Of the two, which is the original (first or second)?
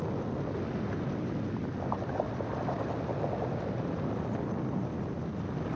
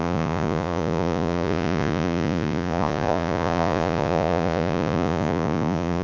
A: first